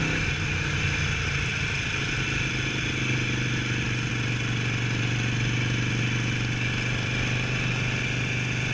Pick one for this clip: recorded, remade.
recorded